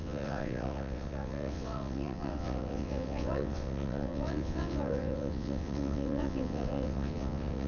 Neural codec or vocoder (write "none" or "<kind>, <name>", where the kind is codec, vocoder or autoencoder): vocoder, WaveNeXt